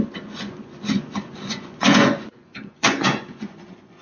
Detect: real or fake fake